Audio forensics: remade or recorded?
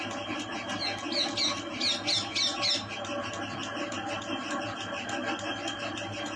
recorded